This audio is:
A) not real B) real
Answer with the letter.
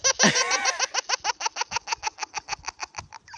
B